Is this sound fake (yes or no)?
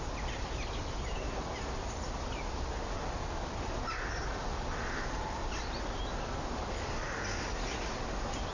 no